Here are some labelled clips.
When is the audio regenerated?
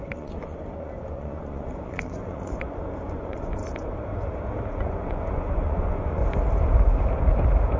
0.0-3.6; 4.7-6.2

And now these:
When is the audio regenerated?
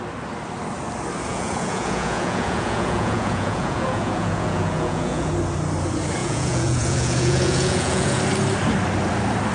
1.3-5.3; 6.2-8.2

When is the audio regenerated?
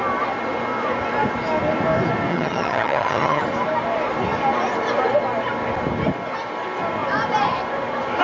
2.3-3.4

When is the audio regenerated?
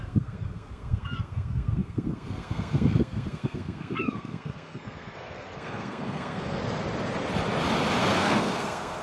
0.0-6.6; 8.0-9.0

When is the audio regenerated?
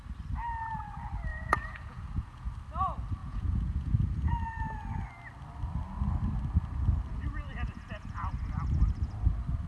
1.3-2.5; 3.2-4.3; 7.5-8.3